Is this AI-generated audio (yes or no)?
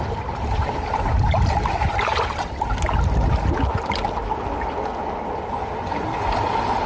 no